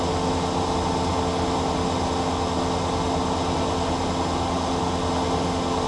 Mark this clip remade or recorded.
recorded